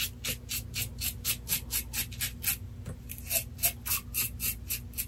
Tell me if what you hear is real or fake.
real